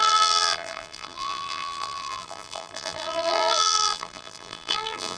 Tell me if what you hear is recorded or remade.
remade